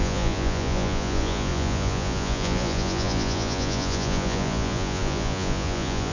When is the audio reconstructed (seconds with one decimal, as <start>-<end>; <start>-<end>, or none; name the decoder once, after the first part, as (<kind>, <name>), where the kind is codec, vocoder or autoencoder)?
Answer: 0.0-6.1 (vocoder, Vocos)